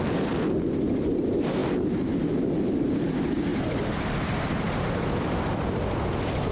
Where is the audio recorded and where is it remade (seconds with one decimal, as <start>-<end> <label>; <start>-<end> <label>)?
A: 0.0-3.5 recorded; 3.5-4.7 remade; 4.7-6.5 recorded